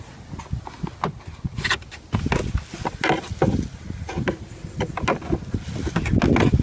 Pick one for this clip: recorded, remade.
recorded